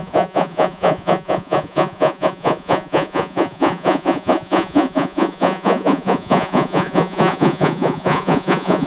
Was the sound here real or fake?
fake